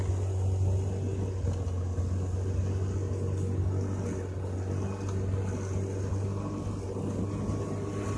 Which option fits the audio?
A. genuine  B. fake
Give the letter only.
A